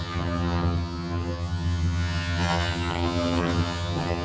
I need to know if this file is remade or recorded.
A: remade